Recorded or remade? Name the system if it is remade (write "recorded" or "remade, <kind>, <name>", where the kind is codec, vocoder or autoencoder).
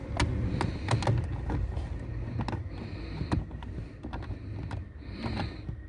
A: recorded